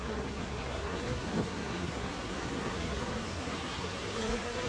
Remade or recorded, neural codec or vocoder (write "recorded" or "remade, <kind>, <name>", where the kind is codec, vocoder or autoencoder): remade, codec, SNAC